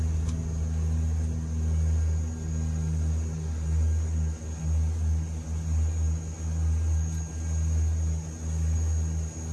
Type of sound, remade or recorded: recorded